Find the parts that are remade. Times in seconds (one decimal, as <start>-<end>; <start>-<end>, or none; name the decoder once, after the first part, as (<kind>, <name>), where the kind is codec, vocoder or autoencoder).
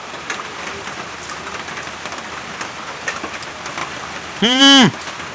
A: 3.8-4.6 (vocoder, BigVGAN v2)